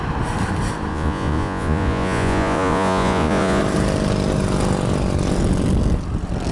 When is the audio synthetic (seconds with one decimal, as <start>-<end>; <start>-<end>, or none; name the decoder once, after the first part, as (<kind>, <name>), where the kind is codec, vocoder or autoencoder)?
0.9-3.6 (vocoder, Vocos)